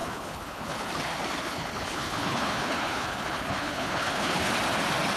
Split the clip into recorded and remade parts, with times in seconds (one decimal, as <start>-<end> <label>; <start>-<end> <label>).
0.0-0.9 remade; 0.9-1.4 recorded; 1.4-4.5 remade; 4.5-5.2 recorded